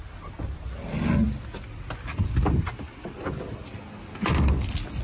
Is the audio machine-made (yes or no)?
no